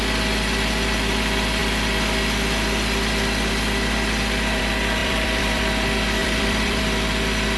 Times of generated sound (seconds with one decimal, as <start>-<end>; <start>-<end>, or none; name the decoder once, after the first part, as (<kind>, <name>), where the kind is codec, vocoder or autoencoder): 5.0-5.6 (vocoder, BigVGAN v2); 6.2-6.8